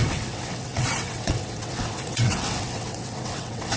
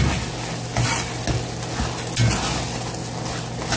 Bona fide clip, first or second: second